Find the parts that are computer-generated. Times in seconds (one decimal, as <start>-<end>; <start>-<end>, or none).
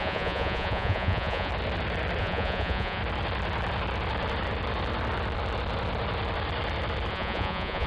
0.0-1.5; 2.2-3.0; 7.1-7.9